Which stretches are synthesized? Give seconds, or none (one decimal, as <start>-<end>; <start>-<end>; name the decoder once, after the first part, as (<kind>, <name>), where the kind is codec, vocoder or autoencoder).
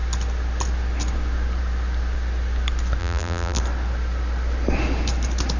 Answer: 3.0-3.6 (vocoder, BigVGAN v2)